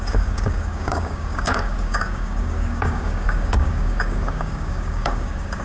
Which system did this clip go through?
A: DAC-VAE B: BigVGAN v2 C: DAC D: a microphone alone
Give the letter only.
C